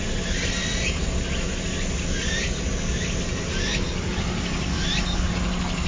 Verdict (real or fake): real